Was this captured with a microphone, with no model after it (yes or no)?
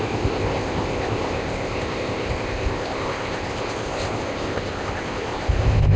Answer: no